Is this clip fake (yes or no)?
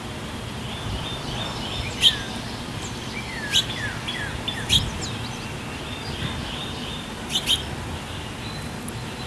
yes